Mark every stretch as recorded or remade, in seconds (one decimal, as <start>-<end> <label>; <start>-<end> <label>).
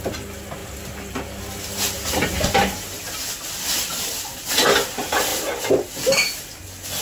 0.0-0.6 recorded; 0.6-1.4 remade; 1.4-7.0 recorded